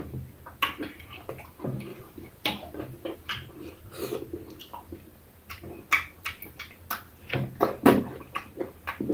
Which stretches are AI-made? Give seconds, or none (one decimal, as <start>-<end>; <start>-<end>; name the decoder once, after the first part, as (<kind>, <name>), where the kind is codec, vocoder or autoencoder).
1.9-3.3 (vocoder, BigVGAN v2)